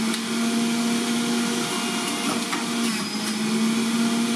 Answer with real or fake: real